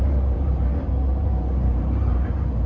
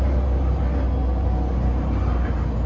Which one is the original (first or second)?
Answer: second